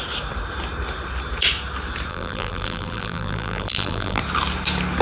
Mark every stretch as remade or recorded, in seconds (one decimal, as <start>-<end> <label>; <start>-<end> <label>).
0.0-2.1 recorded; 2.1-4.2 remade; 4.2-5.0 recorded